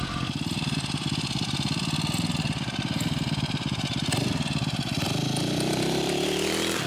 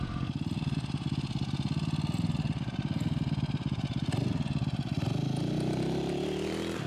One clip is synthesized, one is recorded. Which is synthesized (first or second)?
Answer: first